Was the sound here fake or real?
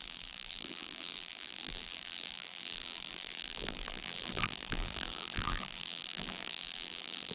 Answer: fake